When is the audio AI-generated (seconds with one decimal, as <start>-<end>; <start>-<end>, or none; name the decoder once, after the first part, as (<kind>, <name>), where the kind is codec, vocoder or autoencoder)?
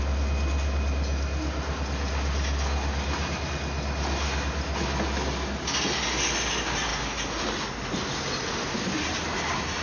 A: none